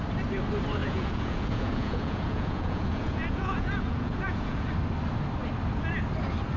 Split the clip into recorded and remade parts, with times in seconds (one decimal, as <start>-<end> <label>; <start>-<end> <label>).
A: 0.0-0.8 recorded; 0.8-4.7 remade; 4.7-6.6 recorded

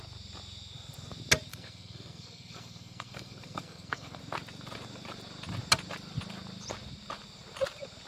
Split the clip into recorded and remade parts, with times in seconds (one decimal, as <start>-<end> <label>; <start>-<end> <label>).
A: 0.0-1.5 recorded; 1.5-4.2 remade; 4.2-8.1 recorded

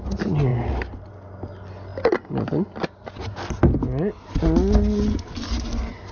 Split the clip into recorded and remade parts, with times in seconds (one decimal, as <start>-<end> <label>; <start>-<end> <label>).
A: 0.0-0.5 recorded; 0.5-1.1 remade; 1.1-6.1 recorded

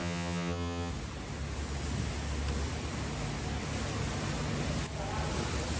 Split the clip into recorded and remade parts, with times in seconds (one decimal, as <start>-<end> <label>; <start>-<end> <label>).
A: 0.0-0.9 remade; 0.9-5.8 recorded

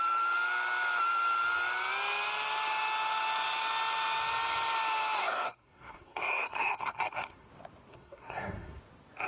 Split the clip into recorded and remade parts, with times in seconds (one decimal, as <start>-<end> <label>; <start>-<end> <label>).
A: 0.0-5.2 recorded; 5.2-7.5 remade; 7.5-7.9 recorded; 7.9-8.8 remade; 8.8-9.3 recorded